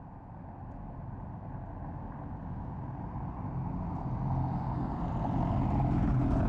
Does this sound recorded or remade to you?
recorded